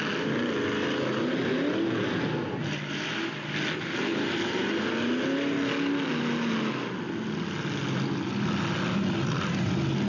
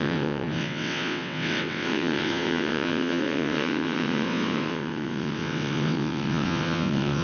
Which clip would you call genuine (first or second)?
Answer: first